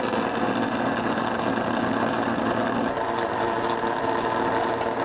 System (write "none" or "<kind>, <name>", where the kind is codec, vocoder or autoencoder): none